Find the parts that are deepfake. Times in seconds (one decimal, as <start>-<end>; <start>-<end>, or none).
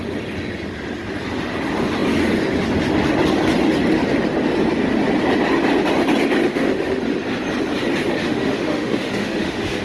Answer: 6.5-7.0; 8.1-9.8